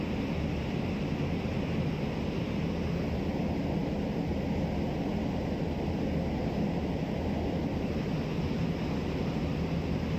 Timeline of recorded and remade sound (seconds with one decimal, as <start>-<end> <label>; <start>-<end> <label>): 0.0-10.2 recorded